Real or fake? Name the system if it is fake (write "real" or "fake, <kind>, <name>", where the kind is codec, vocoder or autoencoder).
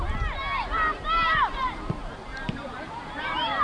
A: fake, vocoder, BigVGAN v2